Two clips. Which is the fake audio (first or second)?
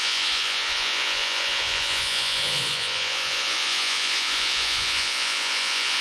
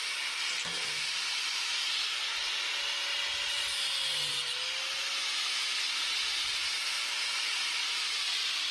first